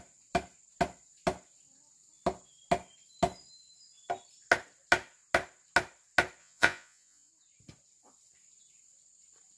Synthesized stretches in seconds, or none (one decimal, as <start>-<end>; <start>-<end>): 6.4-7.3